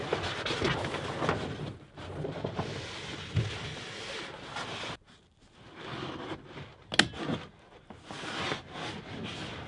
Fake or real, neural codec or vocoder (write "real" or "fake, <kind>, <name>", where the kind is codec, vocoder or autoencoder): real